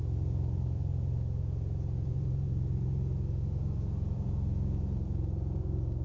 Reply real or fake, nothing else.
fake